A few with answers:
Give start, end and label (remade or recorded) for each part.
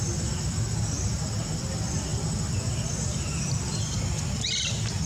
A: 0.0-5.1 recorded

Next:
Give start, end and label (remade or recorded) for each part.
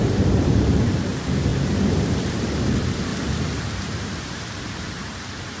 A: 0.0-1.5 remade; 1.5-2.3 recorded; 2.3-3.1 remade; 3.1-3.6 recorded; 3.6-5.6 remade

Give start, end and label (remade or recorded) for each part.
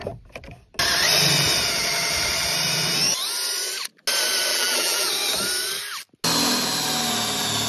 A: 0.0-4.5 recorded; 4.5-5.1 remade; 5.1-7.7 recorded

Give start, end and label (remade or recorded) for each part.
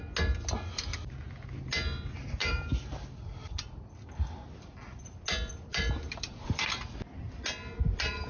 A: 0.0-2.4 recorded; 2.4-5.0 remade; 5.0-5.7 recorded; 5.7-7.0 remade; 7.0-8.3 recorded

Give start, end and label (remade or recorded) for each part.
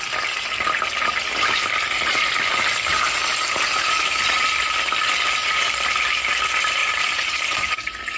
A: 0.0-5.4 recorded; 5.4-6.2 remade; 6.2-6.8 recorded; 6.8-8.2 remade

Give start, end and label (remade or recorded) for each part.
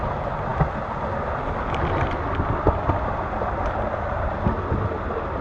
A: 0.0-5.4 recorded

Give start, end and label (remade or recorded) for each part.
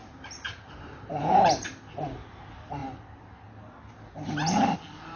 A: 0.0-1.8 remade; 1.8-5.2 recorded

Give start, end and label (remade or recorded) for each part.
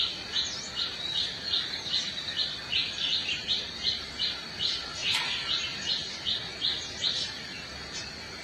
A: 0.0-2.8 recorded; 2.8-4.0 remade; 4.0-5.0 recorded; 5.0-6.1 remade; 6.1-8.4 recorded